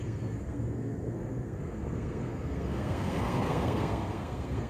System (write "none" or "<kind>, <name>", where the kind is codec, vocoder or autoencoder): codec, SNAC